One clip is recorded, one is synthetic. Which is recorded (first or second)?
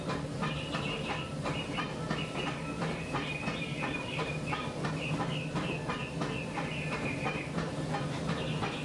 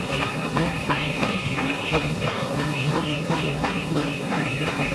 first